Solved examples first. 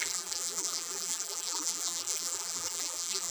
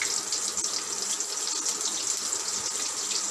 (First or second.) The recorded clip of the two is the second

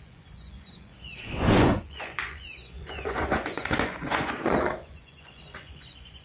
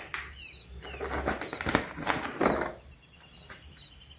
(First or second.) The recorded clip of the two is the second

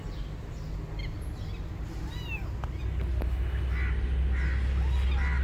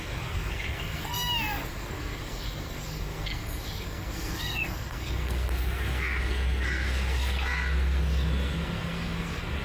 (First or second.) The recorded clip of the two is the first